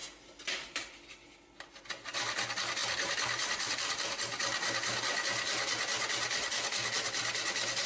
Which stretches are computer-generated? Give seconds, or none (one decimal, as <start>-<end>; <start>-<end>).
2.8-3.7